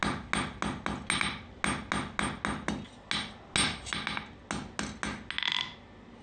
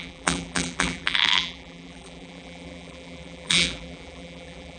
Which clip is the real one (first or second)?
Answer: first